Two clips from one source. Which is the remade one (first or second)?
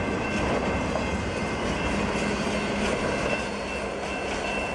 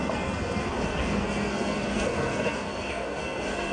second